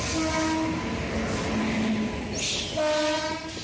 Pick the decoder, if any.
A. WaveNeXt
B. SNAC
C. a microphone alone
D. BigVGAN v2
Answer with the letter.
C